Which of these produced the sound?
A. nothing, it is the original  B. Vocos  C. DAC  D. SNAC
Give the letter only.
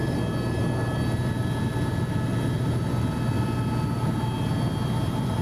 A